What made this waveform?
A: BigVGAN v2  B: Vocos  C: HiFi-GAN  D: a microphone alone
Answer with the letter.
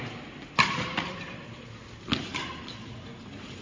A